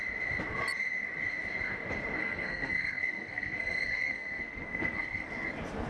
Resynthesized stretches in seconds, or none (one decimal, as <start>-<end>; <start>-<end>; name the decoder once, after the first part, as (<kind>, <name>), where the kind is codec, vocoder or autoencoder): 2.2-5.3 (codec, SNAC)